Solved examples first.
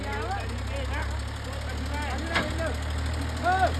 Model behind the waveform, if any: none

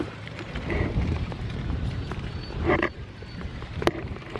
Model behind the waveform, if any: vocoder, BigVGAN v2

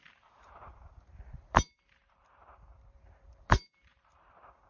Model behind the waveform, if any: vocoder, BigVGAN v2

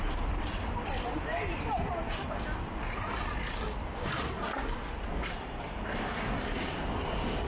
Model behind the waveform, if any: none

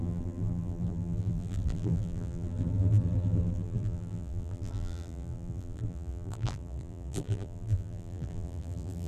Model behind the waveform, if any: vocoder, BigVGAN v2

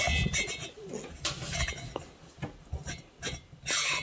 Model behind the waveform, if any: none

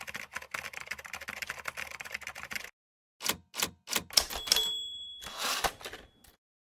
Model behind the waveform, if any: none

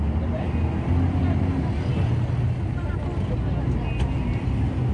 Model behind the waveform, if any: none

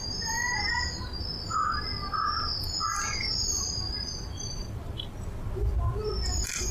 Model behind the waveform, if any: vocoder, BigVGAN v2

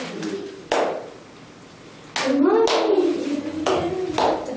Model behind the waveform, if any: none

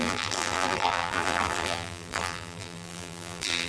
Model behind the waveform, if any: vocoder, BigVGAN v2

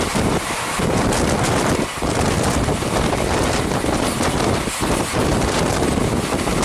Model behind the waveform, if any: none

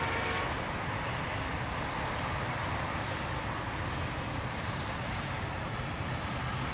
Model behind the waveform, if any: none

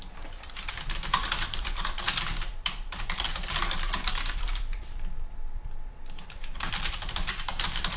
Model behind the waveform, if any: vocoder, BigVGAN v2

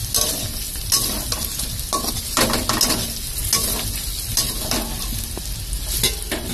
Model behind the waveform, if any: none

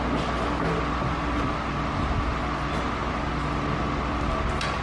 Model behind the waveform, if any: none